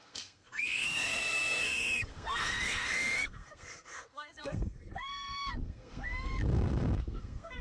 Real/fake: fake